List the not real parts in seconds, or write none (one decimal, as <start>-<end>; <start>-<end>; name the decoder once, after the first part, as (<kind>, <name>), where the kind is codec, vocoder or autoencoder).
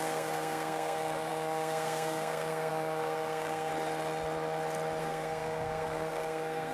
0.0-3.7 (codec, SNAC); 5.0-6.7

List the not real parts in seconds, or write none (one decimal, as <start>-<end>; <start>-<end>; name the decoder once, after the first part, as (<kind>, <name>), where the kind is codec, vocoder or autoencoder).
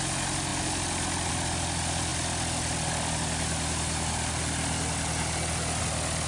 none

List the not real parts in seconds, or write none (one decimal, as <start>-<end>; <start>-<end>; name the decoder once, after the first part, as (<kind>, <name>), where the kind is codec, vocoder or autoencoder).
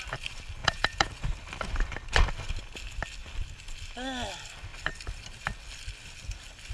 0.6-1.1 (vocoder, Vocos)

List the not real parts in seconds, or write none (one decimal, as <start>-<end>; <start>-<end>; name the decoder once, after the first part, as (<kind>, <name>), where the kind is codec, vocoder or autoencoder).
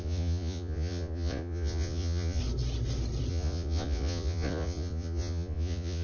0.0-2.4 (vocoder, Vocos); 3.3-6.0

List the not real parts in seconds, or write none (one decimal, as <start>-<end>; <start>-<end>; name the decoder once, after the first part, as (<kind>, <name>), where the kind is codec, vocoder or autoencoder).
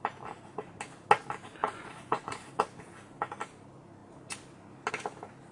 1.6-2.5 (vocoder, Vocos)